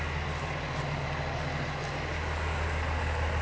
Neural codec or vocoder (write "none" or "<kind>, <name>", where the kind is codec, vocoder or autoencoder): none